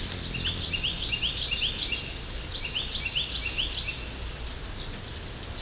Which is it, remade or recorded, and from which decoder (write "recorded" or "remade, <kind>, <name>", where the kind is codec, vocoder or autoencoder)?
recorded